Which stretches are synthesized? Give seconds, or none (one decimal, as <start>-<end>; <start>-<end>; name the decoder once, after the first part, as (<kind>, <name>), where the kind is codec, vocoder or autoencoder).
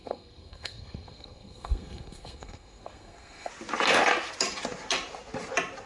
0.0-3.5 (codec, SNAC)